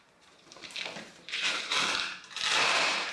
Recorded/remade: remade